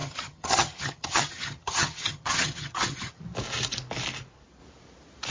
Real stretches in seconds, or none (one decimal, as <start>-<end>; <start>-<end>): 3.2-5.3